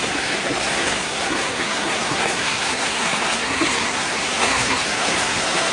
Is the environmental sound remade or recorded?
remade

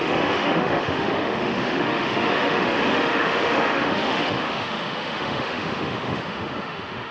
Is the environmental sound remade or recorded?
remade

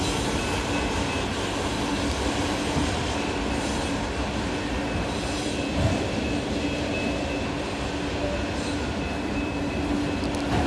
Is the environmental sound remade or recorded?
recorded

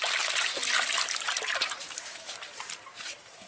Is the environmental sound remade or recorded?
recorded